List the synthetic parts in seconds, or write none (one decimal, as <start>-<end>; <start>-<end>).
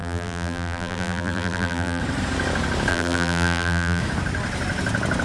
0.0-2.0; 2.9-4.0